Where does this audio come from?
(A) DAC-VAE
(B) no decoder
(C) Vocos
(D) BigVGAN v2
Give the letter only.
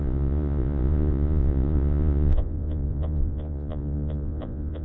C